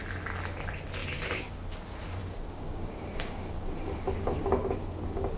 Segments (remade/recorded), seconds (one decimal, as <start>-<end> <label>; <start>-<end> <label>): 0.0-1.0 recorded; 1.0-1.5 remade; 1.5-2.2 recorded; 2.2-5.4 remade